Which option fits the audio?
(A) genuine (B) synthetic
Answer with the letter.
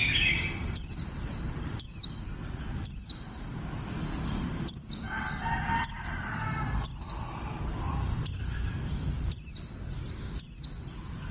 B